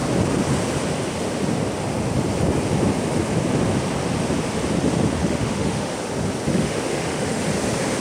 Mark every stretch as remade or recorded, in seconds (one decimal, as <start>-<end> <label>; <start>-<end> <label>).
0.0-5.2 recorded; 5.2-5.9 remade; 5.9-6.5 recorded; 6.5-7.4 remade; 7.4-8.0 recorded